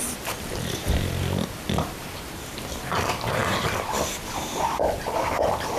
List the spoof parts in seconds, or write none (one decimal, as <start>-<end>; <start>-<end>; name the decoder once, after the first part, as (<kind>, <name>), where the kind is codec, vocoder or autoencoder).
none